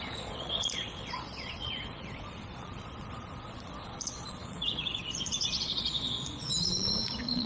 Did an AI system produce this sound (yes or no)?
yes